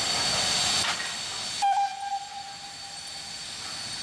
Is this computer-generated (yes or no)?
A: no